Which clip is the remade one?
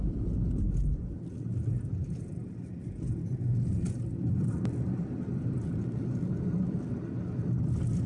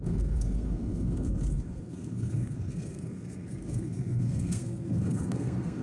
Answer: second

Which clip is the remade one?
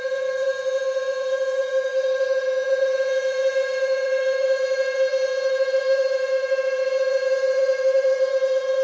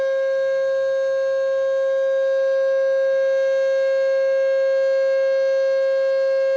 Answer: first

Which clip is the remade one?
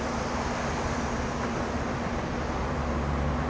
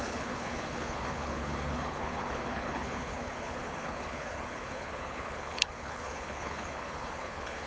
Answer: second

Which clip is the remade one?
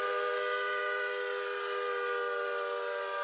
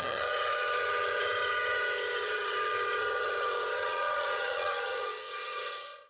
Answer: second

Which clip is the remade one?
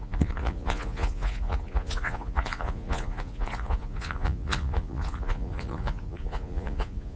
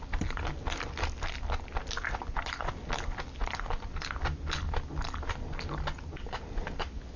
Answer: first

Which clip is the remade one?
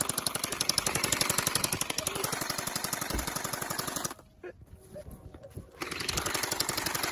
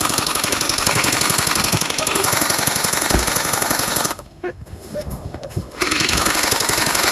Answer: second